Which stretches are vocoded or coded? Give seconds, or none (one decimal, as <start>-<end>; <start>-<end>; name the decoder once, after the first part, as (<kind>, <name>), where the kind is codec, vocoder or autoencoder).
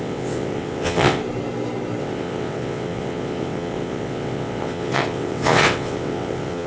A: 0.0-1.2 (vocoder, WaveNeXt); 2.0-6.7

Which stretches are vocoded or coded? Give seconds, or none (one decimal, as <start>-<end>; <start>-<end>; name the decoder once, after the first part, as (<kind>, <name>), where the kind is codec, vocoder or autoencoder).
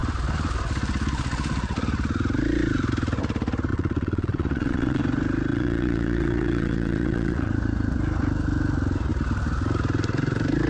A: 3.7-5.0 (vocoder, WaveNeXt); 5.5-7.5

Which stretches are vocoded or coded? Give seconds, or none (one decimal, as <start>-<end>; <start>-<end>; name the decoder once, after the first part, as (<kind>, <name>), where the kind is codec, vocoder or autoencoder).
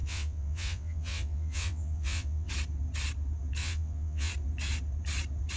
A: 0.0-2.5 (vocoder, WaveNeXt); 3.6-4.3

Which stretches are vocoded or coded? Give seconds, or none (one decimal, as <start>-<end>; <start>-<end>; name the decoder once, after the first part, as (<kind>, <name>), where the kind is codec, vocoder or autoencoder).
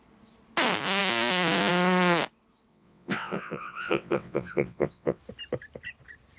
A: 2.7-5.2 (vocoder, WaveNeXt)